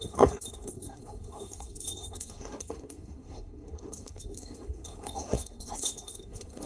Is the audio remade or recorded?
remade